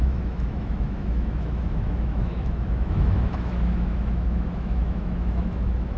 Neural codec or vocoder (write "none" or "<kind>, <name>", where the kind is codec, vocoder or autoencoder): autoencoder, DAC-VAE